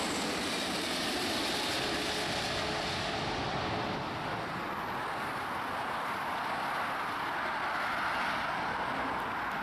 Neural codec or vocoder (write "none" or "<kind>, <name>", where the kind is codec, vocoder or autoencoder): none